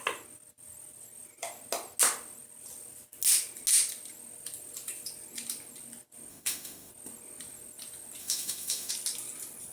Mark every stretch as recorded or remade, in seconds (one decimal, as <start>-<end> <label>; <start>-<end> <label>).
0.0-6.3 recorded; 6.3-6.9 remade; 6.9-8.2 recorded; 8.2-8.9 remade; 8.9-9.7 recorded